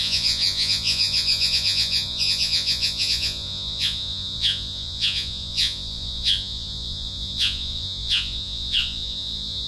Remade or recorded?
remade